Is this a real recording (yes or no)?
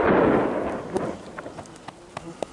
yes